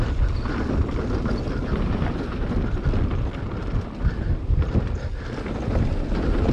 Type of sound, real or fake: real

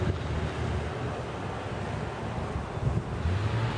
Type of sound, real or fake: real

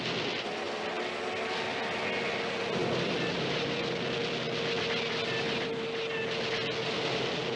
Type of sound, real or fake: real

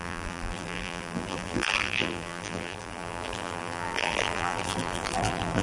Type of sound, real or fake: fake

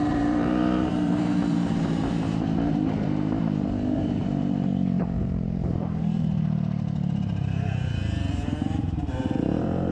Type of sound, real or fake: fake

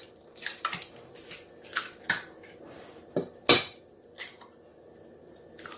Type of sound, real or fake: fake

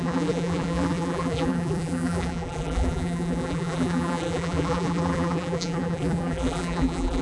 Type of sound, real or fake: fake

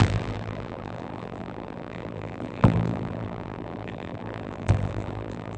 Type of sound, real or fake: fake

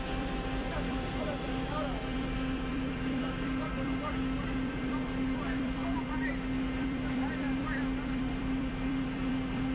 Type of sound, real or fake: fake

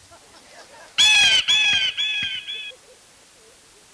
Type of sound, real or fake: real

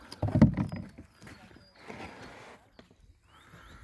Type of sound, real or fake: real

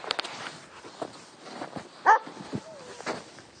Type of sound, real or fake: real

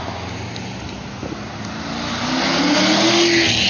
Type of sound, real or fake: real